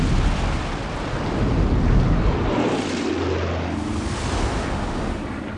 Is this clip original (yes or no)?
yes